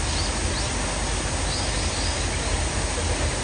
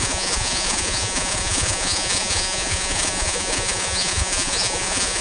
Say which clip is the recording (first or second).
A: first